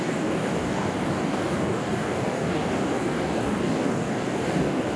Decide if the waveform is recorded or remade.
remade